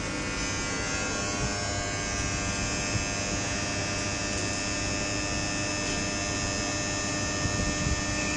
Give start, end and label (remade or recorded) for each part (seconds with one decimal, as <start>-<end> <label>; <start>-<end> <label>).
0.0-8.4 recorded